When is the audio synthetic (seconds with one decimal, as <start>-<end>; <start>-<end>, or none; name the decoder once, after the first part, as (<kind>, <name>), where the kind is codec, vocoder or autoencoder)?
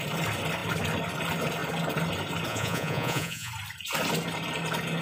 2.5-3.5 (vocoder, Vocos)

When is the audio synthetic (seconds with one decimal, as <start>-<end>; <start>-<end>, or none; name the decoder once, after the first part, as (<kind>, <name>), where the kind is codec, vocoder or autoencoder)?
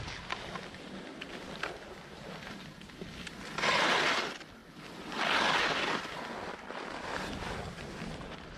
none